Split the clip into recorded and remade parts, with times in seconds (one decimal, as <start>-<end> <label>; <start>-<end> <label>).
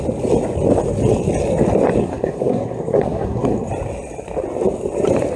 0.0-2.0 recorded; 2.0-3.7 remade; 3.7-5.4 recorded